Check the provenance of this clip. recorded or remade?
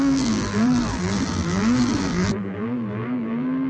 remade